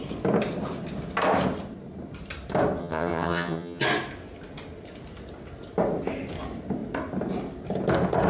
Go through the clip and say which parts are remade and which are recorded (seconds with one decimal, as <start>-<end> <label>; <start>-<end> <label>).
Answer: 0.0-2.8 recorded; 2.8-3.8 remade; 3.8-8.3 recorded